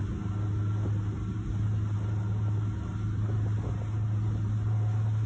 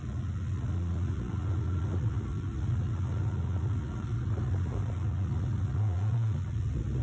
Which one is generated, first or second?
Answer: second